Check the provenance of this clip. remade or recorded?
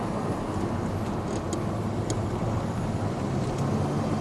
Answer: recorded